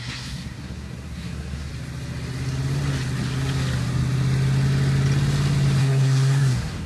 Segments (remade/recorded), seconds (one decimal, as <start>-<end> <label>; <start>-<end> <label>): 0.0-1.7 remade; 1.7-5.8 recorded; 5.8-6.9 remade